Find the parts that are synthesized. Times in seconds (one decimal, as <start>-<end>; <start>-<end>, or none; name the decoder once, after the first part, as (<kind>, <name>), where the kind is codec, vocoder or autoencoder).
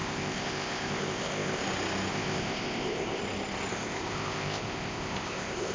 0.0-1.6 (codec, ZipCodec); 2.1-3.2; 3.7-5.7